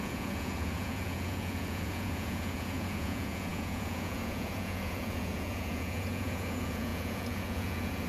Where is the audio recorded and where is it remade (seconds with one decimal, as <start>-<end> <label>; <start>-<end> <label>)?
0.0-8.1 remade